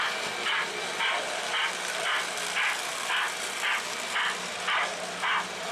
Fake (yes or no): no